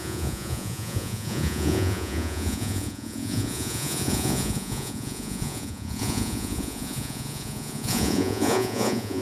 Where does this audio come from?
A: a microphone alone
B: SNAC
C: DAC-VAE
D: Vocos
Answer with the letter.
D